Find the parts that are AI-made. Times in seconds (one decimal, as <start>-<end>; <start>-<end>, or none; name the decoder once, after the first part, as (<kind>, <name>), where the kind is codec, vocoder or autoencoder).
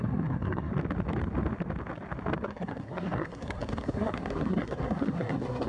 0.0-0.7 (codec, SNAC); 2.4-5.7